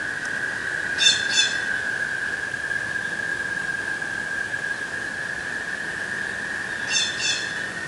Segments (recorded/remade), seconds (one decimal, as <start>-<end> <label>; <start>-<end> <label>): 0.0-7.2 recorded; 7.2-7.9 remade